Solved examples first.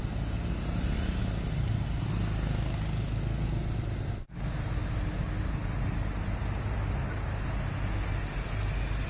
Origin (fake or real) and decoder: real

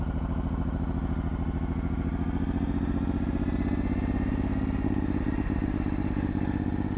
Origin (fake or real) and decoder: real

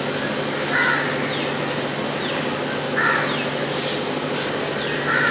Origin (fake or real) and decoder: real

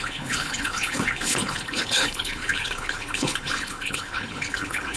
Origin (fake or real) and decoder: fake, codec, HILCodec